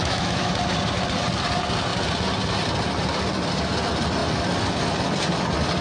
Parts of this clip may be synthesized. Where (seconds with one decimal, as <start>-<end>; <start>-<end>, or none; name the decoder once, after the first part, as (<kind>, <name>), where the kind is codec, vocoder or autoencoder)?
0.0-0.5 (autoencoder, DAC-VAE)